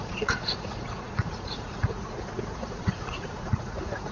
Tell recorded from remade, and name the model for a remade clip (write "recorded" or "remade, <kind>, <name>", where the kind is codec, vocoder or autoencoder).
remade, vocoder, Vocos